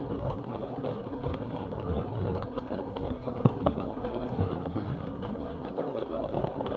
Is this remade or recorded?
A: remade